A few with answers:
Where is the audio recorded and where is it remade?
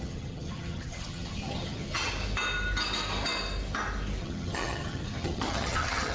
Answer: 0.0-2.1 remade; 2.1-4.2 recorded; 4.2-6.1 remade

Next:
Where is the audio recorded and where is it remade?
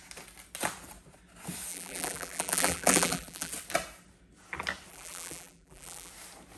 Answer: 0.0-1.7 recorded; 1.7-3.5 remade; 3.5-4.9 recorded; 4.9-6.1 remade; 6.1-6.6 recorded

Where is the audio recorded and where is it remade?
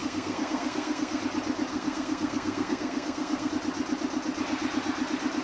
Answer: 0.0-1.2 remade; 1.2-1.7 recorded; 1.7-3.5 remade; 3.5-5.4 recorded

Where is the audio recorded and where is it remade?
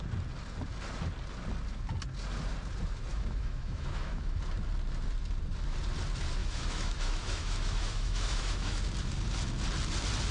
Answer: 0.0-3.1 recorded; 3.1-4.4 remade; 4.4-6.4 recorded; 6.4-8.8 remade; 8.8-10.3 recorded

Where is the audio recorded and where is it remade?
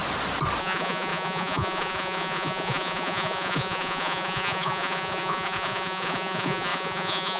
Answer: 0.0-0.6 recorded; 0.6-7.4 remade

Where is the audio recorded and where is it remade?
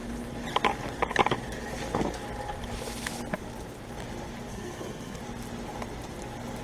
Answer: 0.0-4.5 recorded; 4.5-5.2 remade; 5.2-6.6 recorded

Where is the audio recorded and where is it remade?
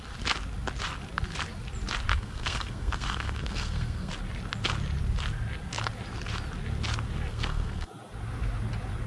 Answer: 0.0-2.1 recorded; 2.1-4.1 remade; 4.1-7.3 recorded; 7.3-7.9 remade; 7.9-9.1 recorded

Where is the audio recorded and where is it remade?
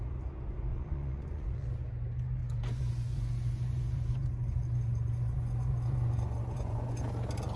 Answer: 0.0-0.7 recorded; 0.7-1.9 remade; 1.9-2.4 recorded; 2.4-7.0 remade; 7.0-7.6 recorded